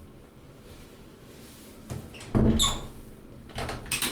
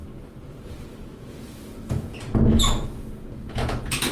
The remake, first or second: second